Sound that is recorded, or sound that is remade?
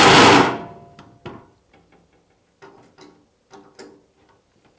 recorded